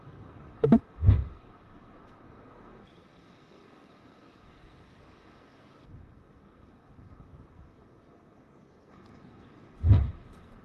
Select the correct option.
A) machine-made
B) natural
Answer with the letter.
A